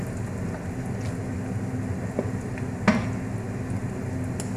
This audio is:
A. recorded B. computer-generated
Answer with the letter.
A